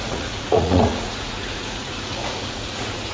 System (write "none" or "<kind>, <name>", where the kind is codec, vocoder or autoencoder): vocoder, Vocos